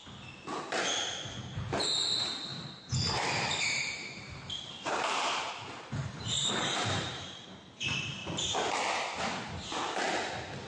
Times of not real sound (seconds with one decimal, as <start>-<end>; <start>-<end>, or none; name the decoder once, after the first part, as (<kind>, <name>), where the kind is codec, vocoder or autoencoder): 2.5-7.2 (vocoder, BigVGAN v2)